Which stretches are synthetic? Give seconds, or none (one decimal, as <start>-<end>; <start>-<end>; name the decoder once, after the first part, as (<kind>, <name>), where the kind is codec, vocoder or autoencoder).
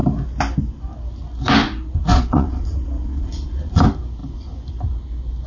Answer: 2.1-3.8 (vocoder, Vocos)